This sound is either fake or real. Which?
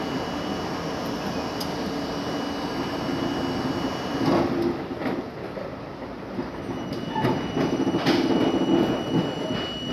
real